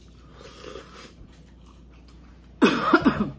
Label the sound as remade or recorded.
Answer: recorded